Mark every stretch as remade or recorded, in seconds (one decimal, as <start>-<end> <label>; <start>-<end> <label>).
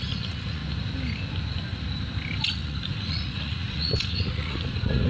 0.0-0.6 remade; 0.6-2.4 recorded; 2.4-5.1 remade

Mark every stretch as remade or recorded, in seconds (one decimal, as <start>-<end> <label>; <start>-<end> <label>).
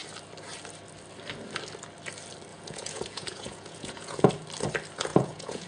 0.0-2.5 recorded; 2.5-4.3 remade; 4.3-5.1 recorded; 5.1-5.7 remade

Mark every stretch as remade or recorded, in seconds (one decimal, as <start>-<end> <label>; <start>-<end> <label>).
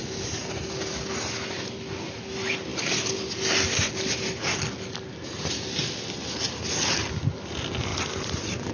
0.0-8.7 recorded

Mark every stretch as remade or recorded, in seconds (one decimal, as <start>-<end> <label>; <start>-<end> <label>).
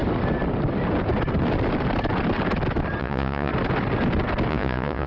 0.0-3.0 recorded; 3.0-3.5 remade; 3.5-4.5 recorded; 4.5-5.1 remade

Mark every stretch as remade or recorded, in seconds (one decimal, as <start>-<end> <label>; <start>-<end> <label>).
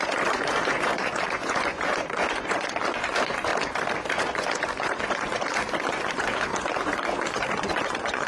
0.0-3.5 remade; 3.5-4.2 recorded; 4.2-8.3 remade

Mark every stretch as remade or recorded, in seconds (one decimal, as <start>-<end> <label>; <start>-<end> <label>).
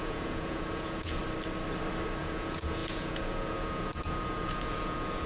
0.0-1.2 remade; 1.2-2.2 recorded; 2.2-5.3 remade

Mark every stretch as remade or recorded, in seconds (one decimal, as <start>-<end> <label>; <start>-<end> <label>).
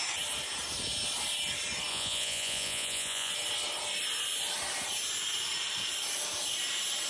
0.0-1.9 recorded; 1.9-3.3 remade; 3.3-7.1 recorded